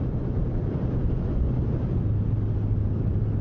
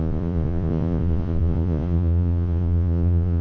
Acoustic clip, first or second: first